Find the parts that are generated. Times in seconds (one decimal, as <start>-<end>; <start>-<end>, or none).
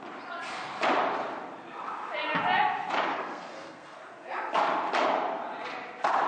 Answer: 3.1-4.0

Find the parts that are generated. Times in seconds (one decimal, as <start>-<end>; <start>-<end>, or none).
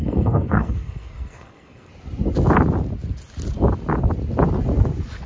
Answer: 0.0-1.9